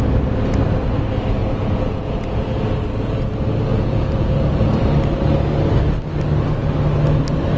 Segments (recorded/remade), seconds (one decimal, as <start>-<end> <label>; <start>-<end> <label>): 0.0-1.4 recorded; 1.4-3.3 remade; 3.3-3.7 recorded; 3.7-4.8 remade; 4.8-7.6 recorded